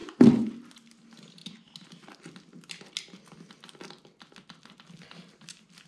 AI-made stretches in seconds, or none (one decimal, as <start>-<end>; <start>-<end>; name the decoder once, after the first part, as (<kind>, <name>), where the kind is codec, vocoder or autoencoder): none